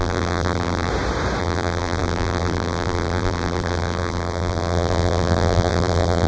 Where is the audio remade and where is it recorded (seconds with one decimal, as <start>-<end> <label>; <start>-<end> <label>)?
0.0-0.9 remade; 0.9-1.4 recorded; 1.4-6.3 remade

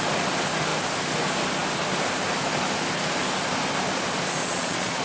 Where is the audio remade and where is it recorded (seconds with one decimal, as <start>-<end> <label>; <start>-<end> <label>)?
0.0-4.4 recorded; 4.4-5.0 remade

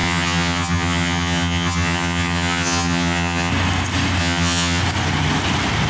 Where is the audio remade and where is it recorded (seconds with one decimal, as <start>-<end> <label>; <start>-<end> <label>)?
0.0-3.5 remade; 3.5-4.2 recorded; 4.2-4.8 remade; 4.8-5.9 recorded

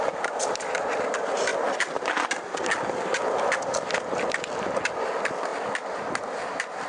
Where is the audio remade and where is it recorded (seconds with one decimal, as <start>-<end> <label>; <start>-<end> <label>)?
0.0-6.9 recorded

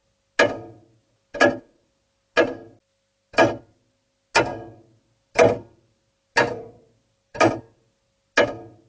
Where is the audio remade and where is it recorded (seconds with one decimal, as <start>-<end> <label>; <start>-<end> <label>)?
0.0-8.9 recorded